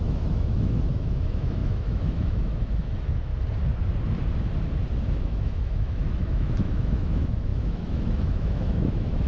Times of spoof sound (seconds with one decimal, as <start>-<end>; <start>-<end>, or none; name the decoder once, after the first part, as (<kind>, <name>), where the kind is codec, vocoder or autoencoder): 0.0-3.3 (autoencoder, DAC-VAE); 4.9-9.3